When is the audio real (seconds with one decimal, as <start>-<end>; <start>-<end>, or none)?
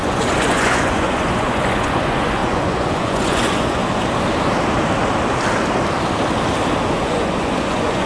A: 3.8-6.9